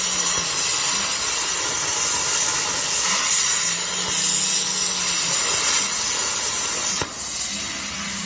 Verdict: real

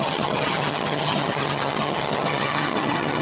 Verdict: fake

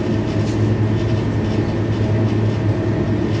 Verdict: real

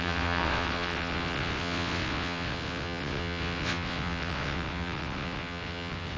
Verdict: fake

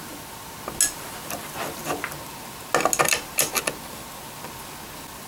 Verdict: real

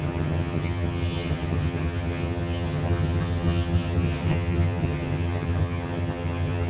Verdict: fake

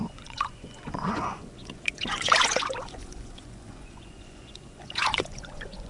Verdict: fake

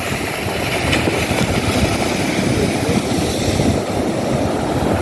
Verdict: real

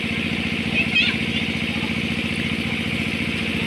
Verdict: real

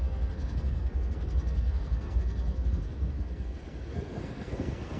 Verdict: fake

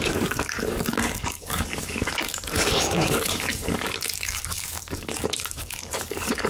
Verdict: fake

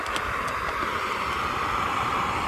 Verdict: real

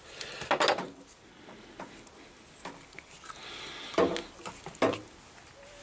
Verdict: real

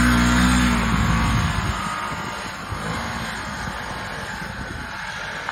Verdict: real